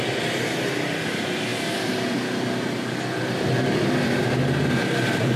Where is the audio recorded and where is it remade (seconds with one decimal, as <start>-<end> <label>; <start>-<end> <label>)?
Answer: 0.0-5.4 remade